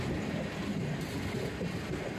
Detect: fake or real real